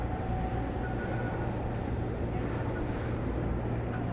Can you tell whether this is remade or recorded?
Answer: recorded